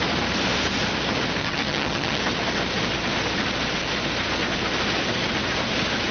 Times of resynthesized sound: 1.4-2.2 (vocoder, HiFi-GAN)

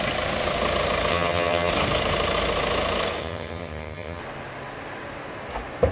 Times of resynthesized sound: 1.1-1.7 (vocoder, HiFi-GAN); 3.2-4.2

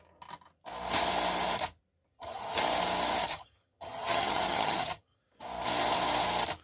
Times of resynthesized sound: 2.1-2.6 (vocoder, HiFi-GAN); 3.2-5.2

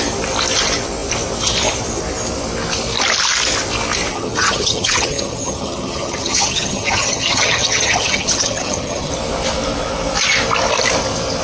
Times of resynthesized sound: 4.1-9.1 (vocoder, HiFi-GAN)

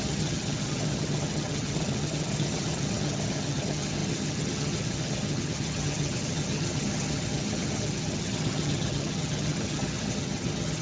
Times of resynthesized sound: 0.0-10.8 (vocoder, HiFi-GAN)